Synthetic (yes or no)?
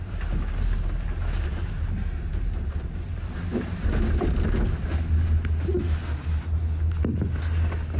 no